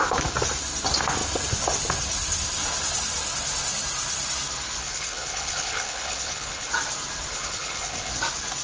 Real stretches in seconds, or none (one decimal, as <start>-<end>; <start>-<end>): 0.0-4.8; 6.7-7.3; 8.1-8.6

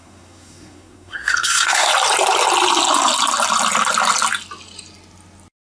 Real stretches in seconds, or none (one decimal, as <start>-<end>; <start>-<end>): 1.9-5.6

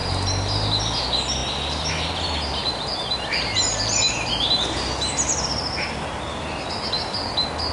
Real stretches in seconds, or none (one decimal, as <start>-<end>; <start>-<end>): 1.4-1.9

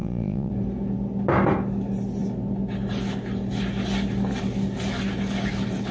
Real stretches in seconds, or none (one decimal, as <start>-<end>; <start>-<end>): 0.5-5.9

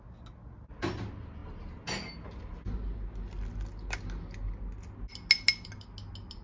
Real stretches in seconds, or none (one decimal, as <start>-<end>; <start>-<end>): 0.0-6.4

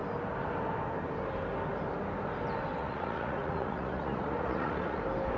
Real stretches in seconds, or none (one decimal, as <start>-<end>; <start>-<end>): 0.0-2.8; 5.0-5.4